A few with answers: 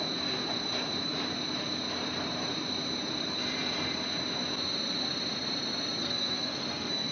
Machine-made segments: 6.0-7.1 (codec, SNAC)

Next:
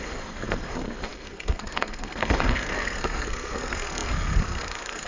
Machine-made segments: 0.0-5.1 (codec, SNAC)

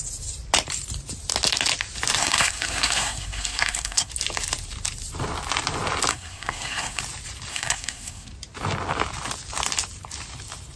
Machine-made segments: 2.2-4.1 (codec, SNAC); 6.1-7.0; 7.5-8.3

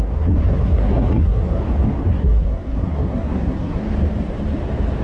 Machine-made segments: 0.0-1.6 (codec, SNAC); 2.1-3.8

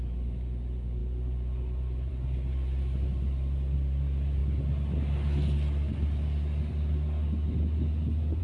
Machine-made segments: none

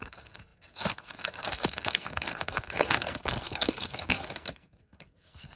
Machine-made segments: 0.0-5.6 (codec, SNAC)